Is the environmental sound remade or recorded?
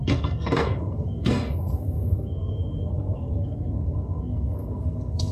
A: remade